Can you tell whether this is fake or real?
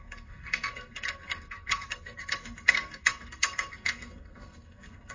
fake